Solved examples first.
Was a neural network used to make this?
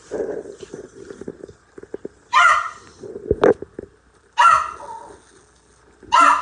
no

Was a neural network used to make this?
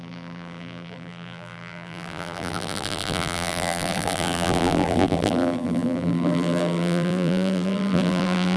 yes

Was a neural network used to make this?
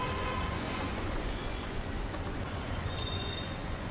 yes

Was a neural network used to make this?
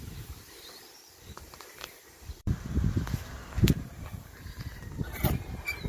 yes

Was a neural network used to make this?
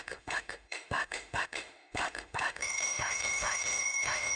yes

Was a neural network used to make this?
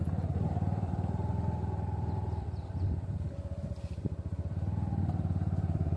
yes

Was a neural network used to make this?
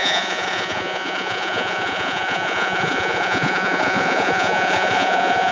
yes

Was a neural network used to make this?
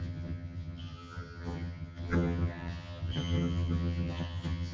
yes